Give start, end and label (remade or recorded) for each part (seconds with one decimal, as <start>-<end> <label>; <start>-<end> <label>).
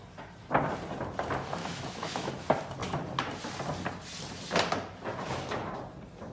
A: 0.0-1.6 recorded; 1.6-2.3 remade; 2.3-6.3 recorded